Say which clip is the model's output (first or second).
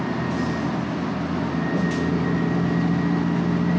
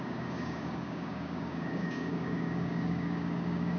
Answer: second